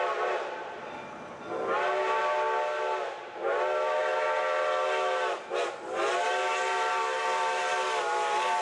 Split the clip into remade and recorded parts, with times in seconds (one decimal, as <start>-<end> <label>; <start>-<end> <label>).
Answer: 0.0-8.6 recorded